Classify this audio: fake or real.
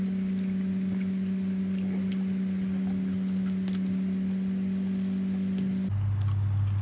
real